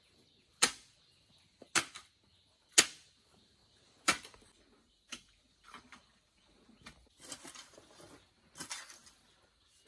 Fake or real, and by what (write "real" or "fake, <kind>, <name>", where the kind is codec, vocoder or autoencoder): real